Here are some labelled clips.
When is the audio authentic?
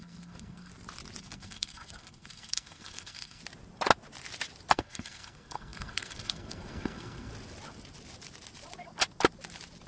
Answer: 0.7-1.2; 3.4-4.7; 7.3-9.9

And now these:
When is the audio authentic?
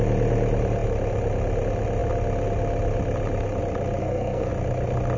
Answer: 0.0-4.0; 4.5-5.2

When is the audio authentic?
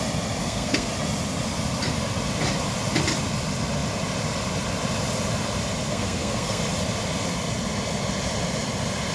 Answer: 0.0-0.4; 0.9-5.9; 6.6-9.1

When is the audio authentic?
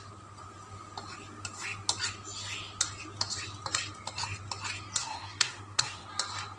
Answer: 0.0-5.0; 6.1-6.6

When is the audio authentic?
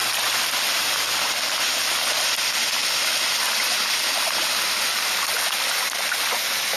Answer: 0.0-6.8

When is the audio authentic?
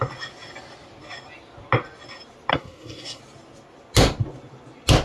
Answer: 0.0-2.5; 3.2-5.0